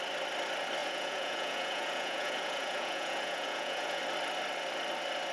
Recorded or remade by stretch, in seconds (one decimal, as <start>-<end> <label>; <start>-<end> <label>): 0.0-0.8 recorded; 0.8-4.0 remade; 4.0-5.3 recorded